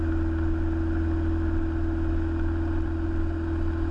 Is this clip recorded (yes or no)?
yes